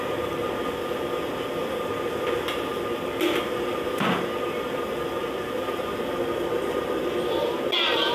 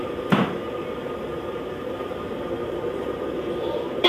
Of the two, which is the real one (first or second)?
first